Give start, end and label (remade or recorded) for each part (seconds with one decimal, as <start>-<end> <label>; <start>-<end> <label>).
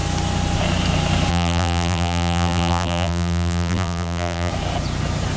0.0-1.3 recorded; 1.3-4.5 remade; 4.5-5.4 recorded